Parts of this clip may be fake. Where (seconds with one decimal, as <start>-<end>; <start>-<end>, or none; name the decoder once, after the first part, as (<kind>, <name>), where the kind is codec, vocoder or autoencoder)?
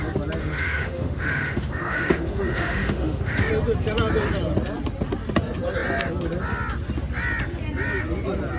0.4-3.5 (autoencoder, DAC-VAE)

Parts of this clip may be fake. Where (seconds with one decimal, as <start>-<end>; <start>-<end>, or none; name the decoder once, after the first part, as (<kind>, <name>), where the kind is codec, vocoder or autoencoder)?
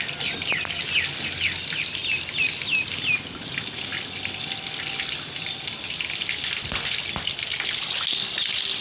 none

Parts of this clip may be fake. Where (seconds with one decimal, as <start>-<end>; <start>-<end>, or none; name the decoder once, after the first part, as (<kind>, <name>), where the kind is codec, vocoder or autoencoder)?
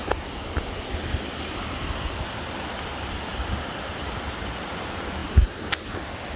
none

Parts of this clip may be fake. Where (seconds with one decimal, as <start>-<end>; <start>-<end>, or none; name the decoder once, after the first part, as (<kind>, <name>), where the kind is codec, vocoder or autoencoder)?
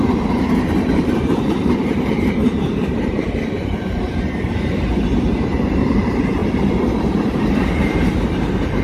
0.0-6.4 (vocoder, BigVGAN v2); 7.0-8.8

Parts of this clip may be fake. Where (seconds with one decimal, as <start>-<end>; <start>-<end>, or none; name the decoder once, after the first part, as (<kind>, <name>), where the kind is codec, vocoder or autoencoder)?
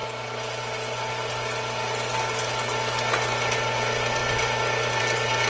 none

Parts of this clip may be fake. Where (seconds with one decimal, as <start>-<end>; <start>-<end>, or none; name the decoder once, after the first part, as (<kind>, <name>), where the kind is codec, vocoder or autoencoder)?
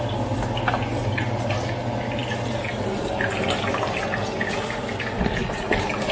none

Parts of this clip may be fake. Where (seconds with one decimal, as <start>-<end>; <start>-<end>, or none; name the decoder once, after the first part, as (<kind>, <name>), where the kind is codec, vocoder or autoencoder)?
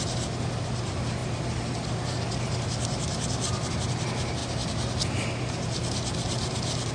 none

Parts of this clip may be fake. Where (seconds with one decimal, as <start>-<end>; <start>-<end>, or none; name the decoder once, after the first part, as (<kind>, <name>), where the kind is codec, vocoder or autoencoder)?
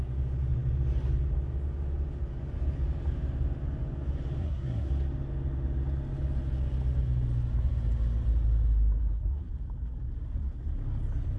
4.4-4.9 (codec, SNAC); 9.0-9.5